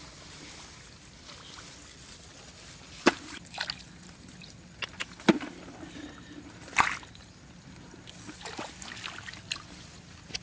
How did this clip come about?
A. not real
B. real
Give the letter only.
B